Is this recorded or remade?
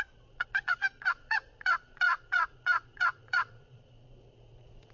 remade